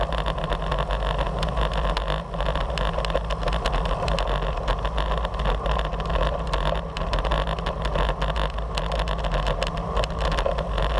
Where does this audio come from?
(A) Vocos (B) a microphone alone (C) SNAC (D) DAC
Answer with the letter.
B